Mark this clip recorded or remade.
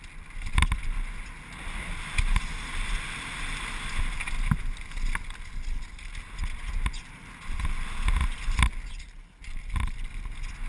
recorded